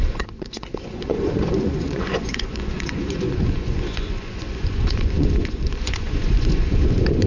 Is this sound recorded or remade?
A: remade